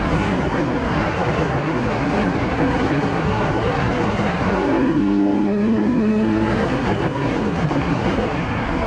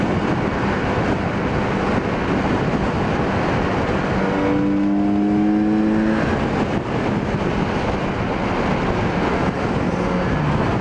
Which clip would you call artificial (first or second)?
first